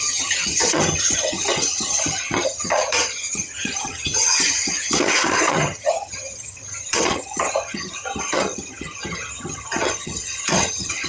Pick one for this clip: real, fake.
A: fake